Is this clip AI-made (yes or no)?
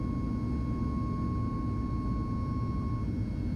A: no